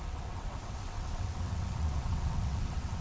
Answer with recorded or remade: remade